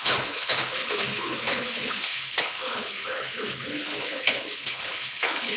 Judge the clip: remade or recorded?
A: remade